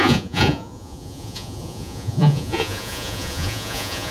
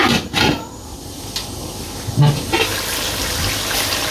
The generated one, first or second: first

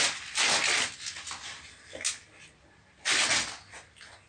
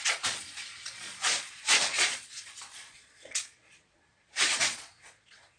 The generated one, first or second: second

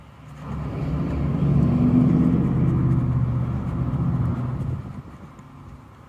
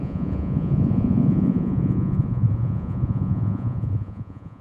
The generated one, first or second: second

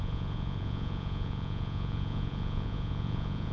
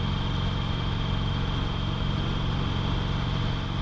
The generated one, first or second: first